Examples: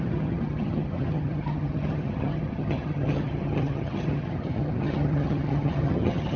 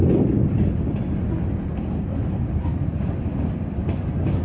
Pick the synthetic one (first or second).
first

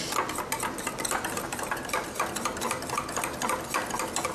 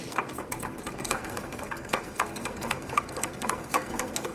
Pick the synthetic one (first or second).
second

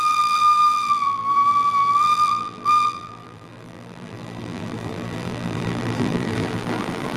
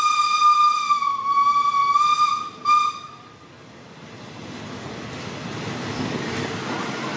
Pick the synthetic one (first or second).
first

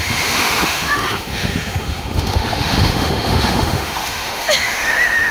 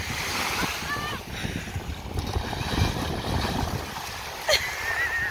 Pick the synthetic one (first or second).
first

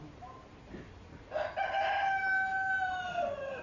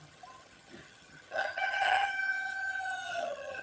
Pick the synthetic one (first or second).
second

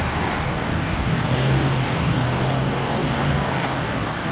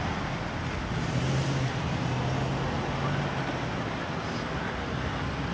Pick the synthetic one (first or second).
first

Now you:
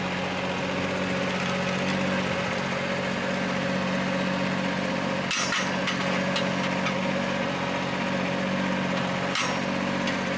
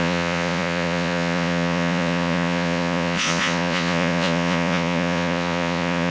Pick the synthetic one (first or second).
second